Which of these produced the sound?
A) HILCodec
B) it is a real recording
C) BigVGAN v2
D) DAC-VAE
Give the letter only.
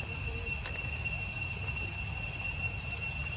C